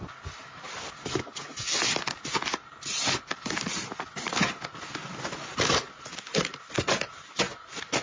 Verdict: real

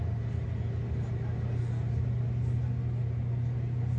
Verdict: real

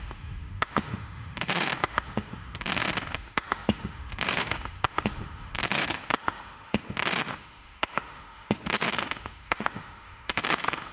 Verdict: fake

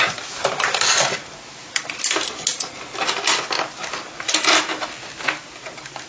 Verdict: real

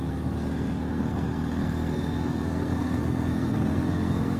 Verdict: fake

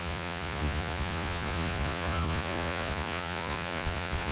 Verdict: fake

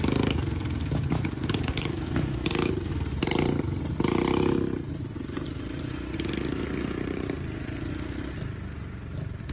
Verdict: real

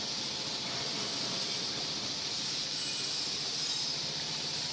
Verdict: real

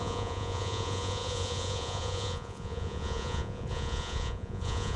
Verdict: fake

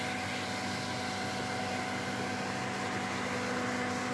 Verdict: real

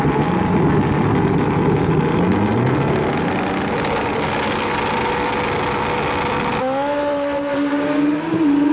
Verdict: real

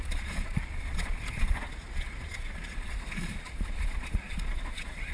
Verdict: fake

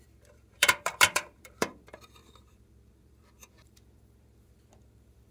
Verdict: fake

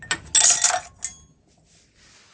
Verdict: real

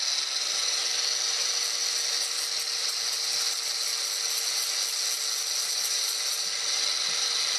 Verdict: real